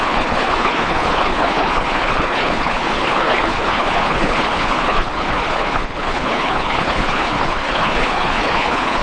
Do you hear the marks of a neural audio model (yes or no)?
yes